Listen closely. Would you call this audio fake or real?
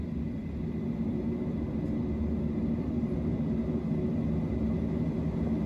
real